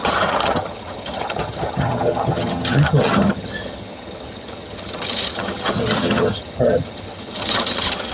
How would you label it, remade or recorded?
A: remade